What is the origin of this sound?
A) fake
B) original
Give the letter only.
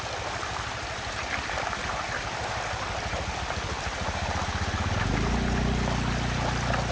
B